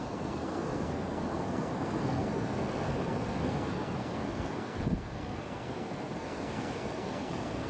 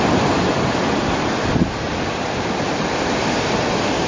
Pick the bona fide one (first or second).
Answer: second